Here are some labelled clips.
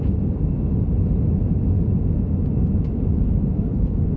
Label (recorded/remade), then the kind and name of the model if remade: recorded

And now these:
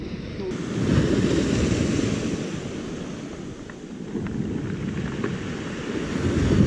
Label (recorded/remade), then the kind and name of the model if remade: recorded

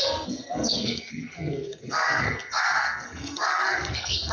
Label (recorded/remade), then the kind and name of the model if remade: remade, codec, SNAC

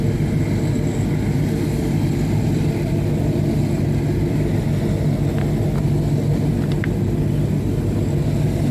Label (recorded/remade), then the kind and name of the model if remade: recorded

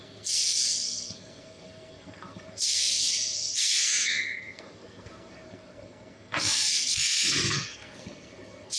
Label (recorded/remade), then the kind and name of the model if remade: remade, codec, SNAC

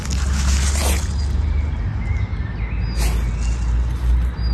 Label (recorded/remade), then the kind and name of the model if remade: recorded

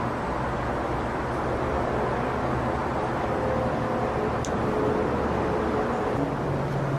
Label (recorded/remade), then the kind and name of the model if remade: recorded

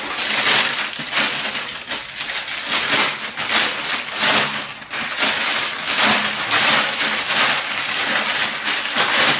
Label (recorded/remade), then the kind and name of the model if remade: recorded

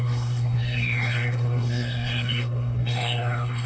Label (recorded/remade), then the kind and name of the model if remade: remade, codec, SNAC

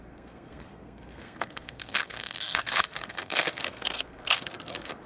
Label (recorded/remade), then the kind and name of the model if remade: remade, codec, SNAC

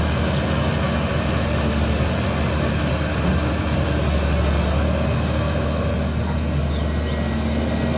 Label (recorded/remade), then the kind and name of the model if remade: recorded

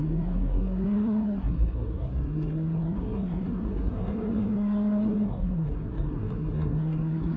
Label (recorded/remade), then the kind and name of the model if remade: remade, codec, SNAC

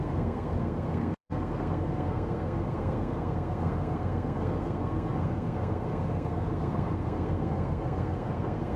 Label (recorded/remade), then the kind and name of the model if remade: remade, codec, SNAC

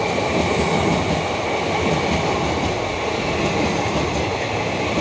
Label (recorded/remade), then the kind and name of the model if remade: recorded